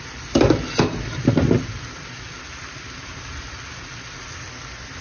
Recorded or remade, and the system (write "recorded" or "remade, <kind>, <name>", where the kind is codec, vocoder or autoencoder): recorded